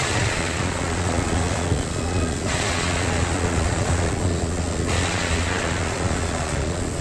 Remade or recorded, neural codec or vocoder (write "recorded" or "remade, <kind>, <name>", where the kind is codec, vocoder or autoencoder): remade, vocoder, Vocos